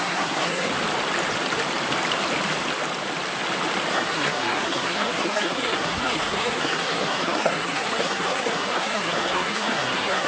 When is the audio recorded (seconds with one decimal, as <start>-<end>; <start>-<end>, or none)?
0.7-3.9